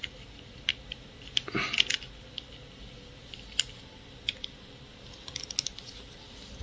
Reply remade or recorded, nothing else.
recorded